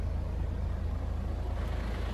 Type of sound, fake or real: real